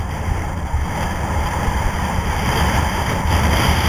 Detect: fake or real fake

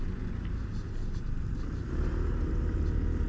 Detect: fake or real real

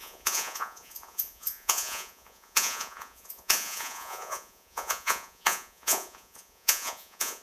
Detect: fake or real fake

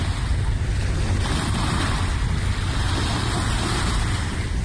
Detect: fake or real real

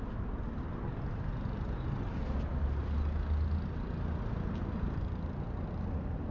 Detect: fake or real real